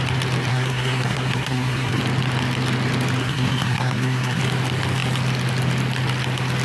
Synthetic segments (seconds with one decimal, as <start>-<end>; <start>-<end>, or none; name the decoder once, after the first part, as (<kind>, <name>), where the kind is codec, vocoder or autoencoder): 0.5-2.0 (codec, SNAC); 3.2-4.4